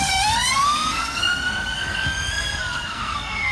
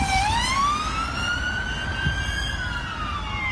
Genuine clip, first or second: second